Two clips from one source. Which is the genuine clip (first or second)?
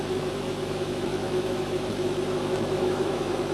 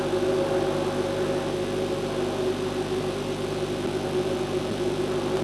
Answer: second